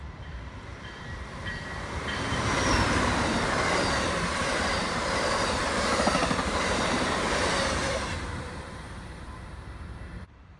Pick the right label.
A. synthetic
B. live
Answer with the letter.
A